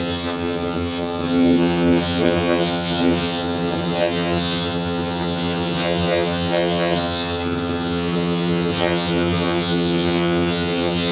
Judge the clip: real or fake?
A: fake